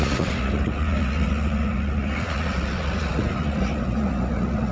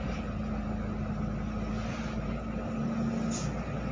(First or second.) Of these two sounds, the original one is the second